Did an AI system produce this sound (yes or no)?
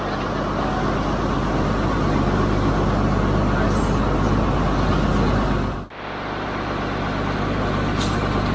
no